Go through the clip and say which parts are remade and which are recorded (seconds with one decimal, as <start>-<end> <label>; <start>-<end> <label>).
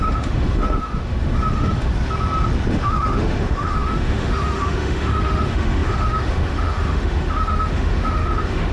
0.0-1.9 remade; 1.9-2.7 recorded; 2.7-8.7 remade